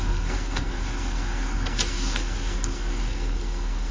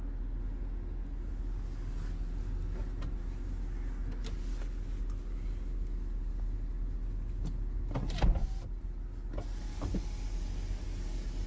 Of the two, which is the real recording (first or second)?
second